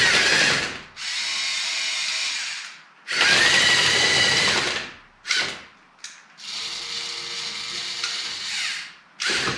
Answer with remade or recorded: recorded